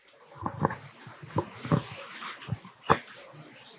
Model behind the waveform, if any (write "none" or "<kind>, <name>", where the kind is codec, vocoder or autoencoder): none